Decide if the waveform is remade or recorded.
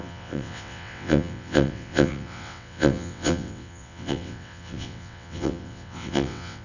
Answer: remade